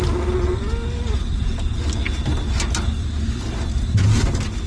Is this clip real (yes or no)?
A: yes